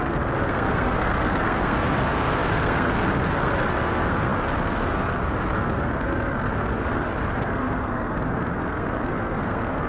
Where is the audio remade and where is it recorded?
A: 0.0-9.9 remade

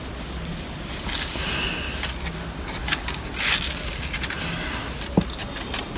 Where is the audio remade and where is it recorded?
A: 0.0-6.0 recorded